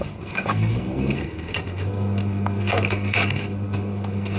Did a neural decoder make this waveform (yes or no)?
yes